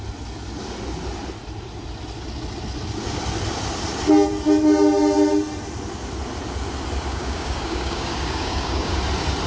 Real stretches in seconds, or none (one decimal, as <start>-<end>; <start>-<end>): 0.0-7.1; 9.0-9.5